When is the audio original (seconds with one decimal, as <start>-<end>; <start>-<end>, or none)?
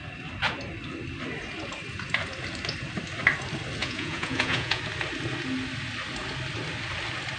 0.0-3.8; 4.8-7.4